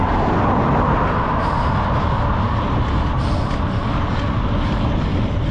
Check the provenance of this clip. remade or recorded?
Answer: recorded